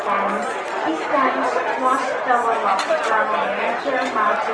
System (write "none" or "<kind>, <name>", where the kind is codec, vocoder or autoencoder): none